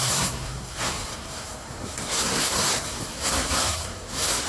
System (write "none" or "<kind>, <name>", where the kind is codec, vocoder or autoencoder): codec, SNAC